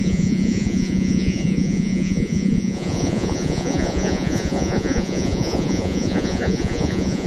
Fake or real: fake